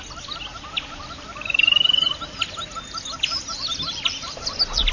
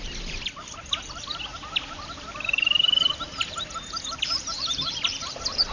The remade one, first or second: second